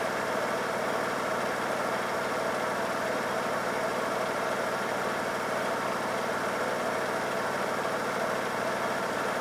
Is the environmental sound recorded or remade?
recorded